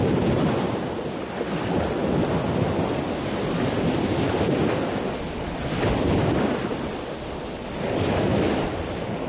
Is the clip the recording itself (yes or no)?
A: yes